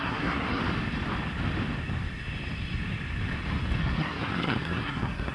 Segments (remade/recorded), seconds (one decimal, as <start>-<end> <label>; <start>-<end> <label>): 0.0-0.6 remade; 0.6-3.8 recorded; 3.8-5.3 remade